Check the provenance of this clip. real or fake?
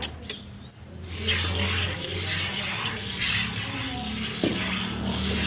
real